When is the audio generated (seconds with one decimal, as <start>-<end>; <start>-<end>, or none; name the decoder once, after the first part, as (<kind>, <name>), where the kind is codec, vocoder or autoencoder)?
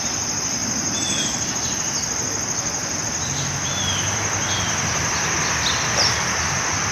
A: 2.8-6.9 (vocoder, BigVGAN v2)